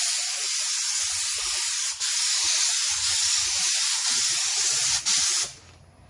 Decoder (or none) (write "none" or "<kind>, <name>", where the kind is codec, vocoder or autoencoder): none